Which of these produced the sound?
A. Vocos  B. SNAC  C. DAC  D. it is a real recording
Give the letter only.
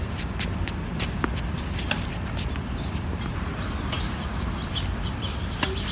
D